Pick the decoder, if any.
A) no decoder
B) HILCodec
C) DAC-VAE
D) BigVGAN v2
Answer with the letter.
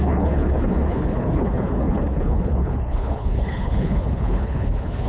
B